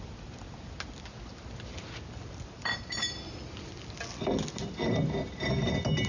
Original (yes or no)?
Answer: yes